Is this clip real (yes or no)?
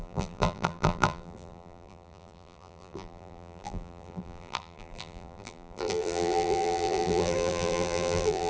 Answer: no